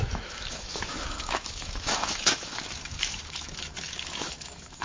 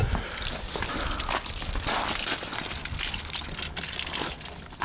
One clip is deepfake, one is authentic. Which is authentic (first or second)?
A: second